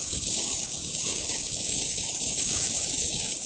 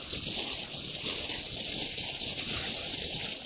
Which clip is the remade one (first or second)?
first